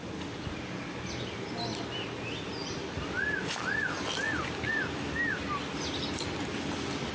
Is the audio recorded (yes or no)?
yes